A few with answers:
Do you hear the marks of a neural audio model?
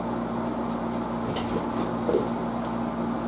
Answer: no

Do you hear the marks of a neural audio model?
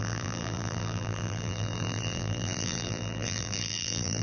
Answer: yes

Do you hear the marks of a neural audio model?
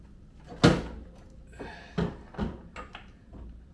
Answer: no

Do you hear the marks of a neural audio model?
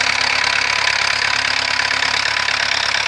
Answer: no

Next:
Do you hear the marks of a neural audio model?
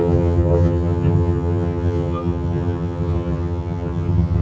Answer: yes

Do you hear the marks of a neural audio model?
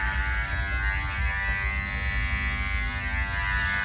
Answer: no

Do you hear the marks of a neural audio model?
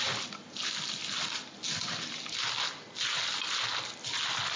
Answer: no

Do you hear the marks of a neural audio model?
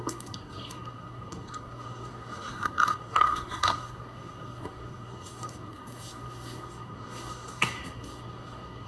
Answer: yes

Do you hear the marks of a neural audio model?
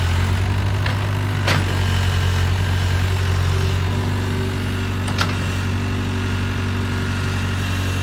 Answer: no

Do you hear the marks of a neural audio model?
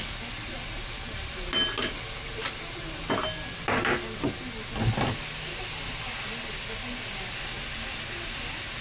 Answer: no